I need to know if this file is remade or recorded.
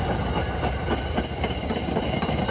recorded